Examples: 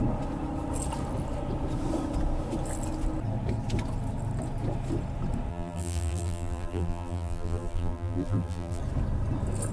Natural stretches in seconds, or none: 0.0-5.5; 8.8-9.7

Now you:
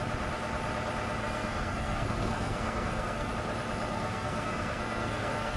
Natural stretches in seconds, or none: 0.0-1.2; 3.3-3.9

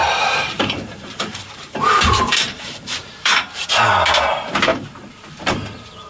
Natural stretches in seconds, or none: 3.7-6.1

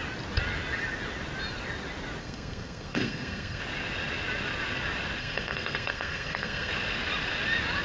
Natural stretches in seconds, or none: 0.0-2.2; 3.6-5.2; 6.7-7.8

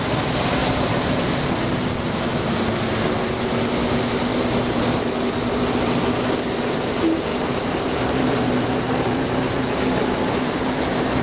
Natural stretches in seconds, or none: 0.0-0.6; 1.6-7.3

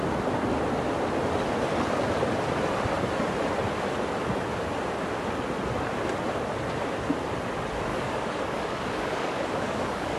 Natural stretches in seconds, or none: 0.0-7.9

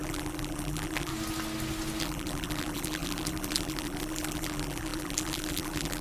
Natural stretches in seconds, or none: 1.1-2.0